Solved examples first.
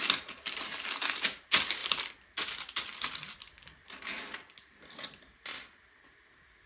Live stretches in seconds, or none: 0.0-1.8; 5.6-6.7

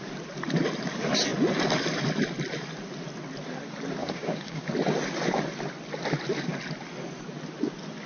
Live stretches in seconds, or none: 0.0-4.0; 4.7-8.1

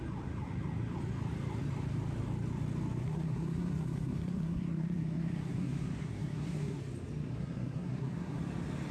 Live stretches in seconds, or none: 0.0-3.0; 6.8-7.3; 8.4-8.9

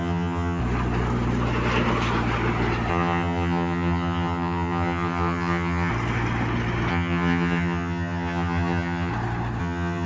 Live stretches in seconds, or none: 0.6-2.9; 5.9-6.9; 9.1-9.6

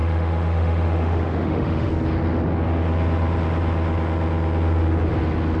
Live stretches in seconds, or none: 1.9-5.6

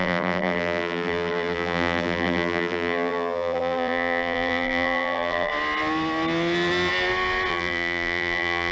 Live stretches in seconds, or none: 5.5-7.5

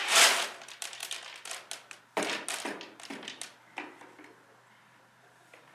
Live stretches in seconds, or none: 0.0-5.7

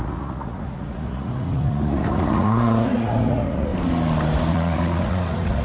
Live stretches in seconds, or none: 3.7-4.5